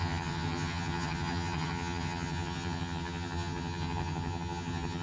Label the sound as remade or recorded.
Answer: remade